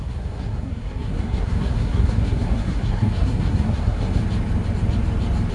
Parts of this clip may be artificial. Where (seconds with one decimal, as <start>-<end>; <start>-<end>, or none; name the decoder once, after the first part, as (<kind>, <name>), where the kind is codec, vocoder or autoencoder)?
0.0-4.2 (codec, SNAC)